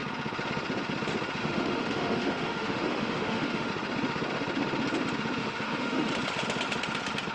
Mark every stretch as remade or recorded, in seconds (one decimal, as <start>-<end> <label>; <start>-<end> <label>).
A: 0.0-1.4 recorded; 1.4-3.7 remade; 3.7-5.4 recorded; 5.4-6.1 remade; 6.1-7.3 recorded